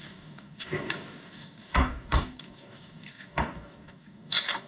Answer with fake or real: fake